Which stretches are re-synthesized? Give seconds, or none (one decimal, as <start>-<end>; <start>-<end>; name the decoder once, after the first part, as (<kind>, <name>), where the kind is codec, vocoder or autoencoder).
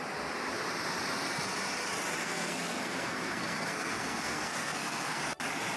2.2-5.2 (codec, SNAC)